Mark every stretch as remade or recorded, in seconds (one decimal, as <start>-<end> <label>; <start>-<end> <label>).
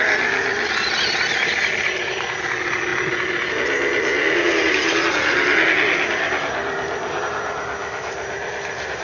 0.0-9.0 recorded